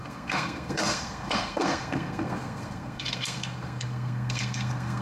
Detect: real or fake fake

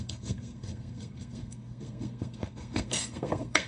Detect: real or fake fake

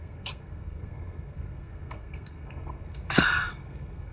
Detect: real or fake fake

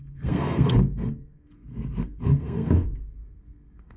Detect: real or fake fake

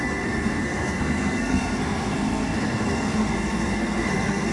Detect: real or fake fake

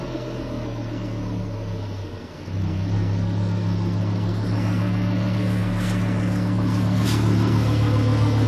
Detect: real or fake fake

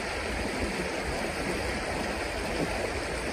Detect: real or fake real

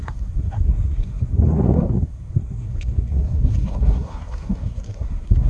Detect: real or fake fake